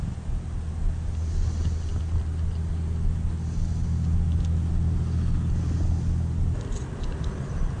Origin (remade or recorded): recorded